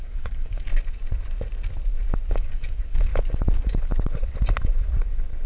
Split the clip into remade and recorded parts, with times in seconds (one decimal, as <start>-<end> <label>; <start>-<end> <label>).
0.0-0.7 remade; 0.7-2.3 recorded; 2.3-3.1 remade; 3.1-5.5 recorded